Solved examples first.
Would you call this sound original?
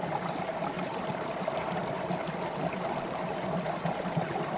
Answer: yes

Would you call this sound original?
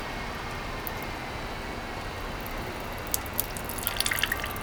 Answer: yes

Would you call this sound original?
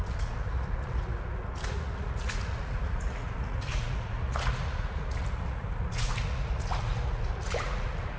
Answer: no